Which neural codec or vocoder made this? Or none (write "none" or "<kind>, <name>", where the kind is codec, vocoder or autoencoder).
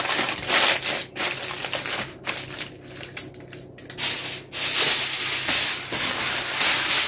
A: none